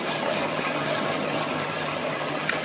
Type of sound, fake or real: fake